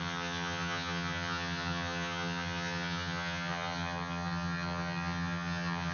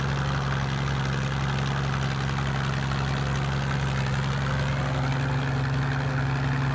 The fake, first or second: first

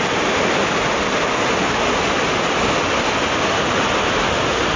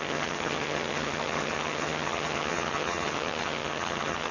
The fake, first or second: second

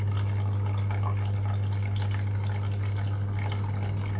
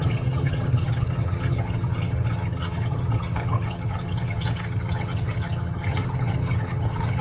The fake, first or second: second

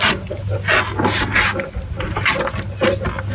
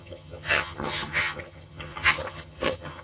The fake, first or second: second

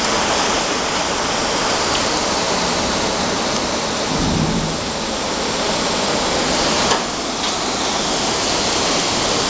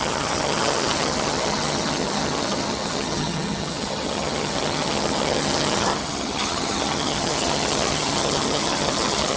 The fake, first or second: second